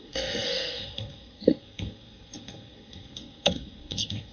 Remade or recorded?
remade